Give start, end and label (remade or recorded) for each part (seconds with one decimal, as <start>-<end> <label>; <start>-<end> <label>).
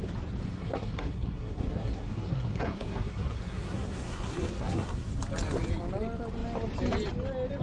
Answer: 0.0-0.5 recorded; 0.5-5.1 remade; 5.1-7.6 recorded